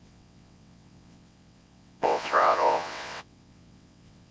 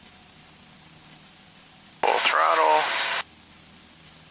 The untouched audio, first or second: second